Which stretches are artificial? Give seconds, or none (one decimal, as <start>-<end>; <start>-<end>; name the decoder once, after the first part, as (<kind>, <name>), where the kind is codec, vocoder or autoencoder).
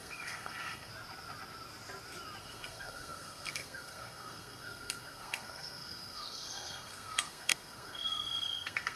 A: 0.0-0.9 (codec, SNAC); 2.4-9.0